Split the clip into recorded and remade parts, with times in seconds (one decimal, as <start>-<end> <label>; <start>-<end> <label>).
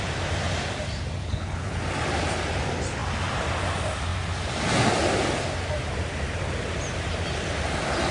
0.0-1.2 recorded; 1.2-1.8 remade; 1.8-8.1 recorded